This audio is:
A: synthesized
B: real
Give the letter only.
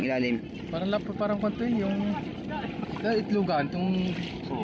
B